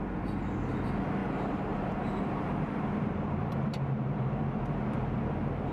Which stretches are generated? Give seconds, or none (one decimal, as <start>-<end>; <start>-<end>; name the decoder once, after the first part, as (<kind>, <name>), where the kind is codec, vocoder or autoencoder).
1.2-4.6 (vocoder, BigVGAN v2)